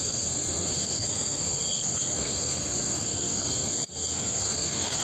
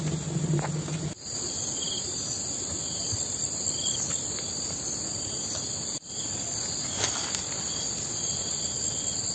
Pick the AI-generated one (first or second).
first